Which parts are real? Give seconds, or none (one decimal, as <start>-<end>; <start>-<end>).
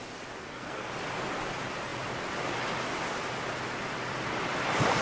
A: 0.0-0.4; 0.9-5.0